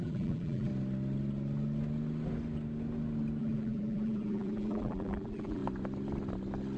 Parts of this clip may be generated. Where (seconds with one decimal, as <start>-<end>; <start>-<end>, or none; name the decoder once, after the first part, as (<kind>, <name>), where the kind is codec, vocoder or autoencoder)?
0.0-0.7 (vocoder, BigVGAN v2); 3.4-5.6